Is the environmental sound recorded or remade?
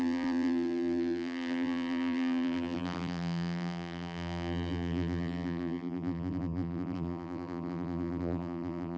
remade